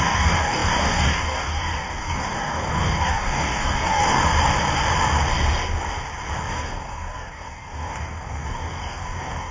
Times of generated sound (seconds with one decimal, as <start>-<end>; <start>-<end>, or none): 0.0-4.2; 6.5-9.5